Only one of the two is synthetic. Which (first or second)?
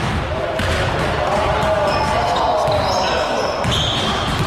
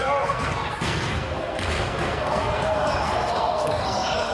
second